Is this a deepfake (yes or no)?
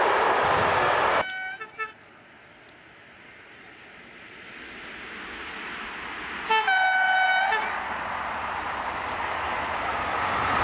no